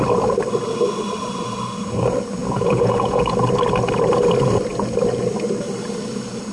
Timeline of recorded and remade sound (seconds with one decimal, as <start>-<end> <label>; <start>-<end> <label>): 0.0-2.4 recorded; 2.4-3.2 remade; 3.2-6.5 recorded